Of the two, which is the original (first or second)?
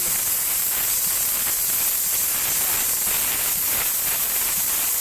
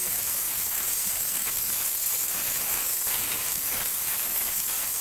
first